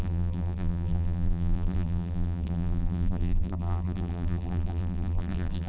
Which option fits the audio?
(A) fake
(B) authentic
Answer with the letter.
A